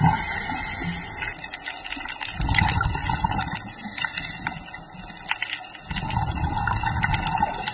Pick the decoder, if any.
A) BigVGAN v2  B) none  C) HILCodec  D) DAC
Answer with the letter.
B